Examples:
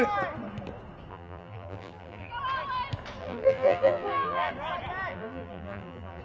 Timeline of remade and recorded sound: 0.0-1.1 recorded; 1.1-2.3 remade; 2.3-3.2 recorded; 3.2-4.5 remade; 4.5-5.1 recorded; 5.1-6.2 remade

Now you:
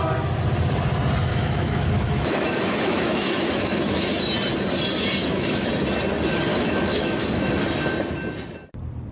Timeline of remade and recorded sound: 0.0-1.3 recorded; 1.3-4.2 remade; 4.2-5.2 recorded; 5.2-5.7 remade; 5.7-6.5 recorded; 6.5-7.5 remade; 7.5-9.1 recorded

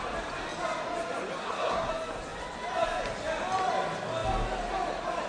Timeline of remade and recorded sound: 0.0-1.4 recorded; 1.4-1.9 remade; 1.9-5.3 recorded